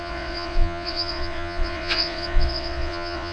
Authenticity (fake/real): fake